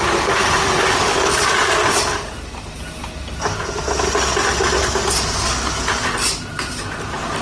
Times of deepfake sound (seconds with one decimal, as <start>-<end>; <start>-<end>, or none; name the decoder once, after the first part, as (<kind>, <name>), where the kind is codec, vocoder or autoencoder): none